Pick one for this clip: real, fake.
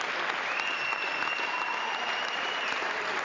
real